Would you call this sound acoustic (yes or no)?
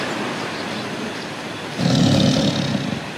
yes